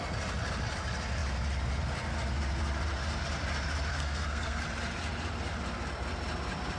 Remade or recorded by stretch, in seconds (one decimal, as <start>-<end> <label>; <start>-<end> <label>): 0.0-3.9 recorded; 3.9-4.6 remade; 4.6-6.8 recorded